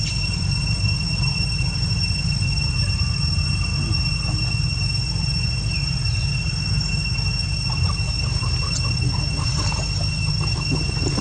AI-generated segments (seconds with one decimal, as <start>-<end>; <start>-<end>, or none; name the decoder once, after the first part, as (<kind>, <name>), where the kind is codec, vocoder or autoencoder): 0.0-3.7 (vocoder, BigVGAN v2); 4.3-11.2